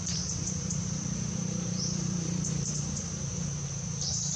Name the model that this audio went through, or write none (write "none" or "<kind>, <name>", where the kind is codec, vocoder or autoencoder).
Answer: vocoder, BigVGAN v2